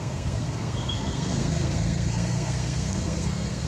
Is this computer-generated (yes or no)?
yes